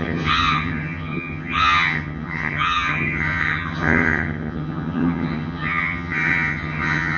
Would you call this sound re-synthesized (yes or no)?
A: yes